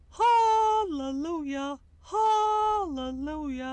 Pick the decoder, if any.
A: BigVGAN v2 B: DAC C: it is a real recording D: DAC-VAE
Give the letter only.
C